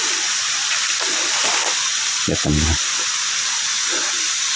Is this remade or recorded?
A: recorded